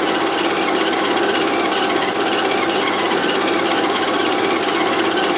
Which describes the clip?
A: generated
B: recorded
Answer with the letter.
B